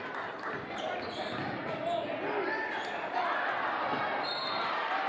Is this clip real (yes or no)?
yes